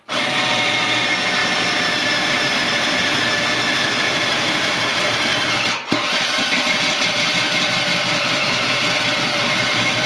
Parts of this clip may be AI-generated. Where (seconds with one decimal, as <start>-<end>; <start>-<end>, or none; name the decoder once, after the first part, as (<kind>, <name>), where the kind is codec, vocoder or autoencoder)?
1.4-2.5 (vocoder, BigVGAN v2)

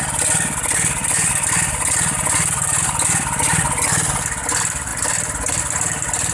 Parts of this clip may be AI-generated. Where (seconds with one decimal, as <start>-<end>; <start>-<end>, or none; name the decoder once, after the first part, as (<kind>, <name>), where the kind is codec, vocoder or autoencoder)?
none

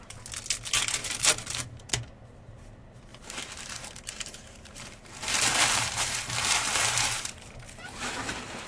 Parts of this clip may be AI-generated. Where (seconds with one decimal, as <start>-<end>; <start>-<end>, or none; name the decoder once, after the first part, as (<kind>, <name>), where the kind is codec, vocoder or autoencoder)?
1.0-1.9 (vocoder, BigVGAN v2); 3.1-8.7

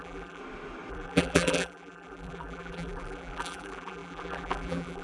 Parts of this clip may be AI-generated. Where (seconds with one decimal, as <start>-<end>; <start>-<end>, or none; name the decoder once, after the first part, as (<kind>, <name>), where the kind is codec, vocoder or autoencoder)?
0.0-0.4 (vocoder, BigVGAN v2); 0.9-5.0